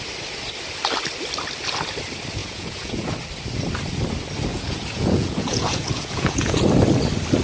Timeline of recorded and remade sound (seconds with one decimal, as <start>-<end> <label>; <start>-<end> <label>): 0.0-2.4 recorded; 2.4-3.1 remade; 3.1-4.5 recorded; 4.5-6.6 remade; 6.6-7.4 recorded

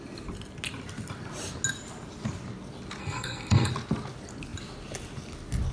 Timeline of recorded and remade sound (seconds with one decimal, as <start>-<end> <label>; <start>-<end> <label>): 0.0-3.0 recorded; 3.0-3.7 remade; 3.7-5.7 recorded

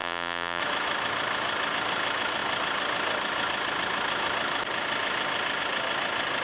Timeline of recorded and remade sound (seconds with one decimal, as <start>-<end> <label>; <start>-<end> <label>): 0.0-0.6 remade; 0.6-6.4 recorded

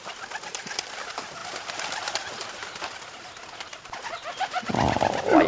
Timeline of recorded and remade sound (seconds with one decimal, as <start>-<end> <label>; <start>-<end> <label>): 0.0-5.5 recorded

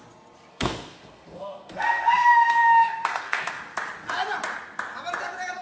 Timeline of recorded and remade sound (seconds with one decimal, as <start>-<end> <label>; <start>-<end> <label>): 0.0-0.5 recorded; 0.5-3.6 remade; 3.6-5.6 recorded